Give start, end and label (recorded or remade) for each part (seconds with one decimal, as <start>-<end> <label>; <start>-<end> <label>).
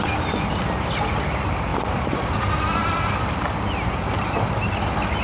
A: 0.0-1.7 recorded; 1.7-2.2 remade; 2.2-2.8 recorded; 2.8-4.2 remade; 4.2-5.2 recorded